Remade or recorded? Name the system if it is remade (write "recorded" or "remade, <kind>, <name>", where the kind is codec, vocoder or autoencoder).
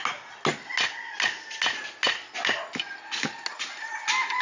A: recorded